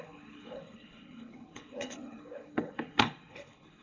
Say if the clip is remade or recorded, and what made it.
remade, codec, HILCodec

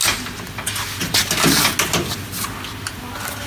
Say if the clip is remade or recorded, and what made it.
recorded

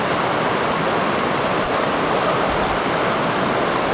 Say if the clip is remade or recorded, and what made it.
recorded